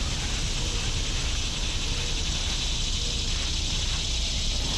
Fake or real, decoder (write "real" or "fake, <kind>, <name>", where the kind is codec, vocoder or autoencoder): real